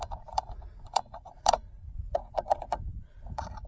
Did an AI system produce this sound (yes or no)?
yes